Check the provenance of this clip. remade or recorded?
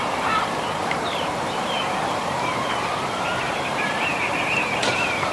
remade